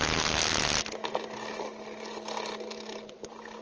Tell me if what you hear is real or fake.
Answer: real